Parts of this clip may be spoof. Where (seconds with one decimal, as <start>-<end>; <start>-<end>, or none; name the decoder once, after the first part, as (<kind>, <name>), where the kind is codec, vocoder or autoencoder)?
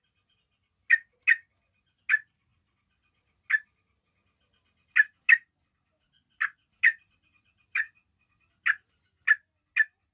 none